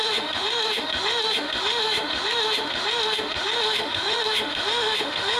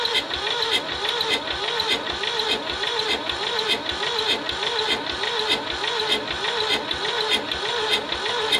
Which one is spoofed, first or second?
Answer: first